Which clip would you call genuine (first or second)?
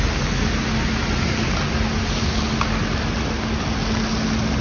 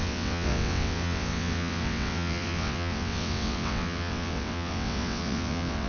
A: first